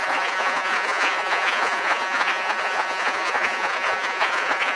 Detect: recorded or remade remade